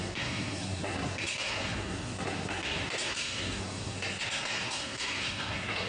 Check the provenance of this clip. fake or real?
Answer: fake